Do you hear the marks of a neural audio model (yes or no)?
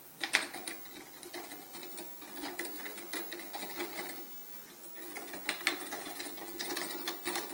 no